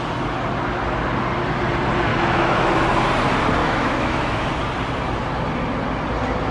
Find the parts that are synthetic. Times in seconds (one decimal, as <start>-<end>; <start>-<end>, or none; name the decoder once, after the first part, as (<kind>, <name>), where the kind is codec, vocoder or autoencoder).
2.1-2.8 (autoencoder, DAC-VAE); 3.6-4.5